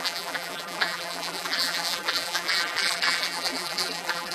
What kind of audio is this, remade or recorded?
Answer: remade